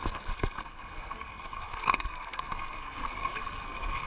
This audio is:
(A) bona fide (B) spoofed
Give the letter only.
B